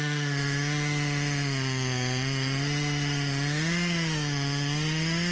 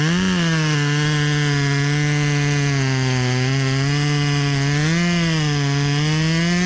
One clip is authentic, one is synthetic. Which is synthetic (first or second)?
first